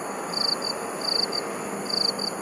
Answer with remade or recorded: recorded